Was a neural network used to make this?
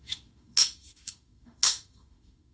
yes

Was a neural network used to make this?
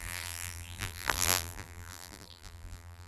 yes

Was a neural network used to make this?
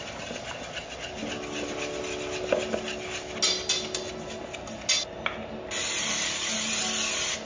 no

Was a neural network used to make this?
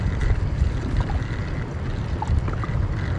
no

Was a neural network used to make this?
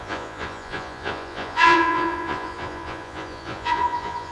yes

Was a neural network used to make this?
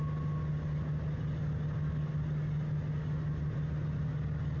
no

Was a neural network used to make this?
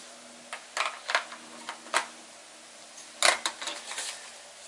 no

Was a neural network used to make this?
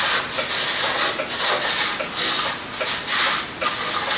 no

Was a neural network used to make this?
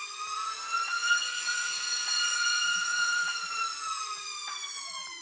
yes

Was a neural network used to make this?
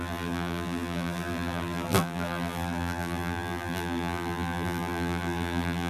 yes